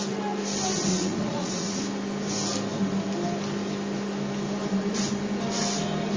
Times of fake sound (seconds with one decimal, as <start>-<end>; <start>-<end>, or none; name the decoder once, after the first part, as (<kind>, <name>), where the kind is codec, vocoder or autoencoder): 0.9-1.8 (vocoder, Vocos)